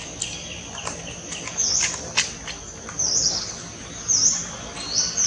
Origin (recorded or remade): remade